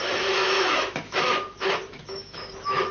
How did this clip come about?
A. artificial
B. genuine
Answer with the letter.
A